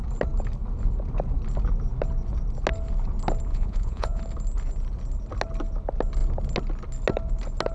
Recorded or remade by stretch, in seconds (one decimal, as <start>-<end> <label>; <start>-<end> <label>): 0.0-3.5 recorded; 3.5-4.2 remade; 4.2-7.7 recorded